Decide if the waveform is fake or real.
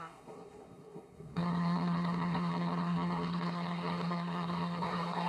fake